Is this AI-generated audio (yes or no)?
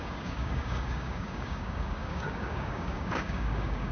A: yes